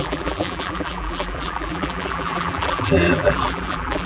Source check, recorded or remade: remade